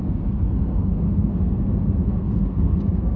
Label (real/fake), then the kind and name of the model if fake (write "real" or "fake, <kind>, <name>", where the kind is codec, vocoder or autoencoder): fake, codec, SNAC